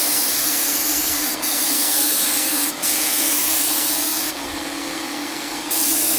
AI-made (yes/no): yes